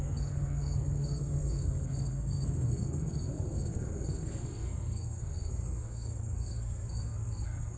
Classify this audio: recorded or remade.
remade